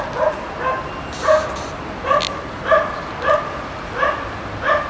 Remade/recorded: recorded